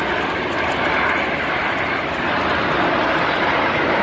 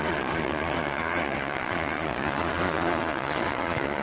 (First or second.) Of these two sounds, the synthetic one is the second